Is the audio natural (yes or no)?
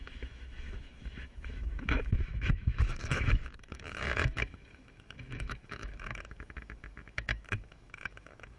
no